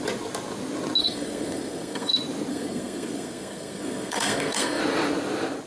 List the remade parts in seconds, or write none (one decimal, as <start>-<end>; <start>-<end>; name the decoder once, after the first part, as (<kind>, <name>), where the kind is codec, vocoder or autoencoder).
1.0-2.1 (codec, SNAC); 2.5-4.8

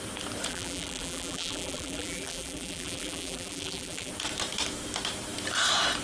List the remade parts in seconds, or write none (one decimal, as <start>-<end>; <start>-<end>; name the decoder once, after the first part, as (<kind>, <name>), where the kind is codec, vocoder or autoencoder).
0.5-4.1 (vocoder, BigVGAN v2)

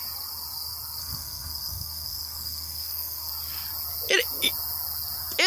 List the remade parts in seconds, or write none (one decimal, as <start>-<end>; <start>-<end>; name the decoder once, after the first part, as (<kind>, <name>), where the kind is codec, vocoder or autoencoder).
1.0-3.3 (codec, SNAC)

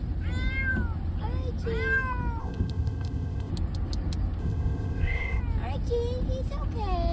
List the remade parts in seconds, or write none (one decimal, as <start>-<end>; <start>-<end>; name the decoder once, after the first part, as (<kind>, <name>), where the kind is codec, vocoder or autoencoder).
2.4-3.5 (codec, ZipCodec); 4.4-5.4

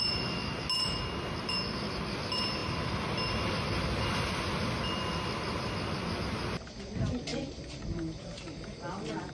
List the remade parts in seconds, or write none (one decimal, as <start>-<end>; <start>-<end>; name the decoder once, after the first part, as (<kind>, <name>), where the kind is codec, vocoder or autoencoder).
7.3-9.3 (vocoder, BigVGAN v2)